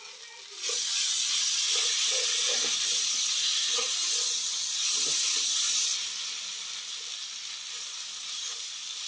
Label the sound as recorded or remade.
recorded